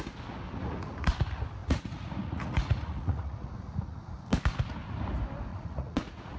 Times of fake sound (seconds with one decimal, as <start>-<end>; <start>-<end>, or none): 0.6-1.1; 1.6-4.2; 5.5-6.4